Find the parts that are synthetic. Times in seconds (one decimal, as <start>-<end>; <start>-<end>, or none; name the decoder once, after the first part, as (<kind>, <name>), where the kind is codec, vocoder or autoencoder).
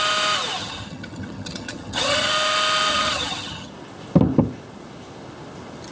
0.6-2.3 (vocoder, HiFi-GAN); 2.9-3.7